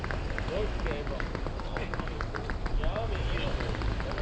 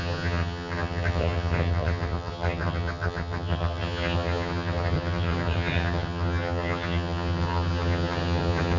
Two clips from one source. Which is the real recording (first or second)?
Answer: first